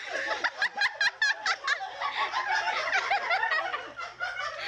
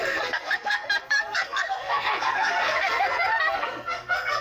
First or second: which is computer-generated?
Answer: second